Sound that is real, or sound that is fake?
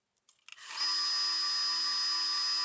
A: real